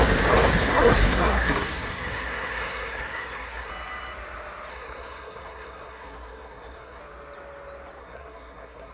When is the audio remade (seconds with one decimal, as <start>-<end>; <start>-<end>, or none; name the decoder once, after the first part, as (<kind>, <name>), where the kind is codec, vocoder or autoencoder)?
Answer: 0.7-3.7 (codec, SNAC); 4.7-7.0; 8.0-8.9